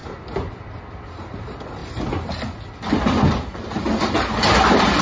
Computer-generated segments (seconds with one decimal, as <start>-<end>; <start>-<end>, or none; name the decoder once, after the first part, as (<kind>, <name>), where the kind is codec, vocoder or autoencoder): none